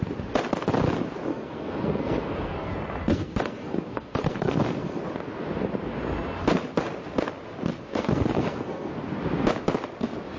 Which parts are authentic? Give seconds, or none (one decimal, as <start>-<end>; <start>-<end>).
0.0-1.3; 2.7-3.1; 5.0-7.9; 8.9-10.4